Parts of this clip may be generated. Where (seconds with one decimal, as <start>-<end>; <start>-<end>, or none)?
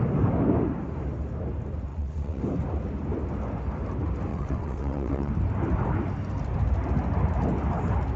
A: 1.9-2.4; 4.3-5.3